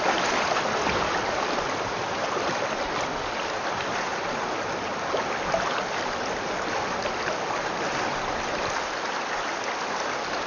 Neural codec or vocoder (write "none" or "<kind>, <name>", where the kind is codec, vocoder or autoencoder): none